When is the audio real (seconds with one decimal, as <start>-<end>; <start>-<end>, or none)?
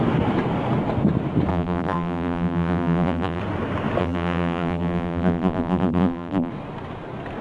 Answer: 0.0-1.5; 3.4-4.0; 6.5-7.4